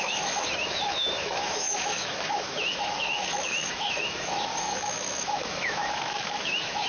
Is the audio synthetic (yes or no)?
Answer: yes